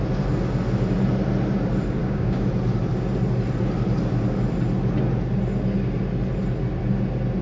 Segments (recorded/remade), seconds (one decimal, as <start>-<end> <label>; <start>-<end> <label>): 0.0-2.0 recorded; 2.0-2.5 remade; 2.5-7.4 recorded